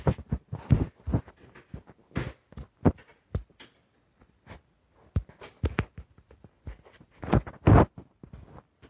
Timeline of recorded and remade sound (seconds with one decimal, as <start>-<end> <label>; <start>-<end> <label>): 0.0-8.9 recorded